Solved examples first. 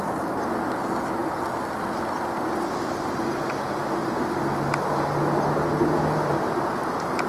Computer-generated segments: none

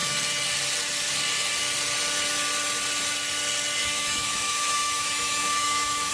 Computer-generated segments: 3.8-6.1

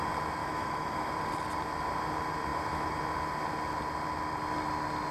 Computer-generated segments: 0.4-1.1

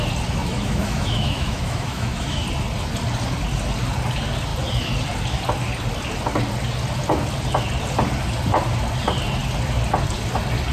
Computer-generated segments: 0.4-2.4

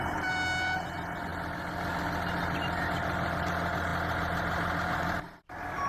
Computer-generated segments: none

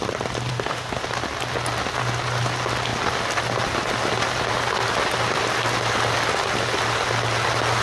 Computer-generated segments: 0.5-1.0

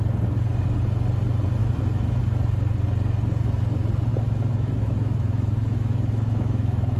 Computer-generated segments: 1.6-2.2; 4.1-7.0